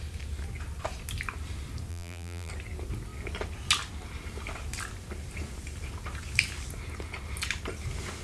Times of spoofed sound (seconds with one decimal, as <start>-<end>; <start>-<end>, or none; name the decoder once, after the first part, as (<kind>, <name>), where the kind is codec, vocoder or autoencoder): 1.9-2.5 (vocoder, BigVGAN v2)